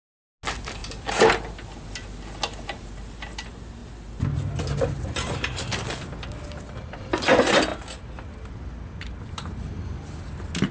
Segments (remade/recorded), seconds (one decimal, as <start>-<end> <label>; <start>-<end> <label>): 0.0-10.7 recorded